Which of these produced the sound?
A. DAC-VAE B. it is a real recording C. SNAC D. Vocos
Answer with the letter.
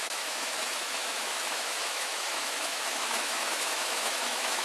A